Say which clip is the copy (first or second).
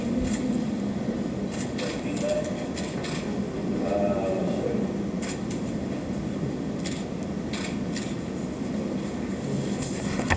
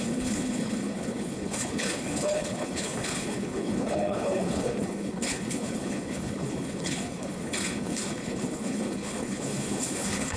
second